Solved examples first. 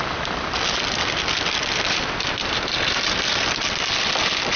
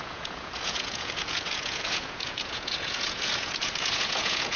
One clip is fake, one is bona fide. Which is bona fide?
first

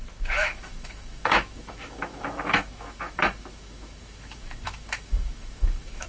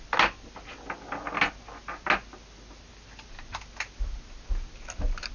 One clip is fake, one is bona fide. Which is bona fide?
second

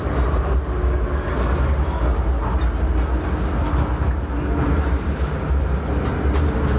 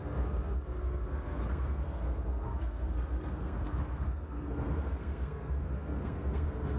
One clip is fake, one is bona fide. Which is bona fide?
first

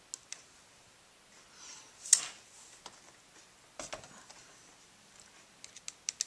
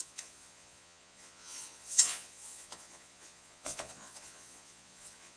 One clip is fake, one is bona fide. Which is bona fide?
first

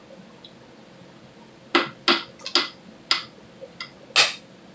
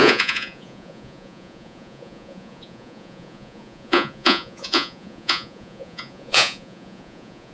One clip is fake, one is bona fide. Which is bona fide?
first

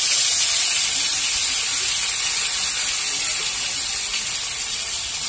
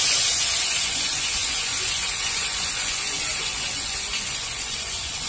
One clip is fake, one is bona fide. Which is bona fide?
first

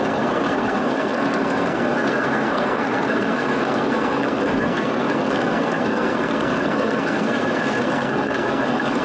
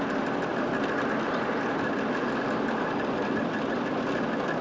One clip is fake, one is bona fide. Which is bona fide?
second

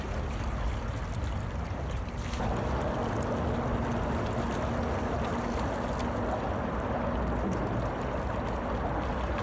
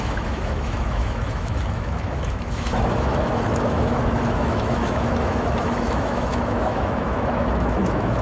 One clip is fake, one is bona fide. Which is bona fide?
first